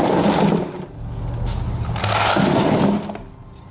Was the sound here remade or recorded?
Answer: recorded